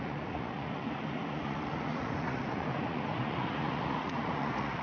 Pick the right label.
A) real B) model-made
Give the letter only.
B